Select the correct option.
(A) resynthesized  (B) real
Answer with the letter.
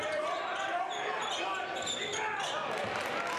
B